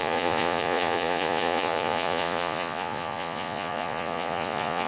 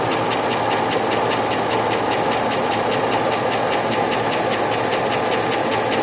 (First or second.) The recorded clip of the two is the second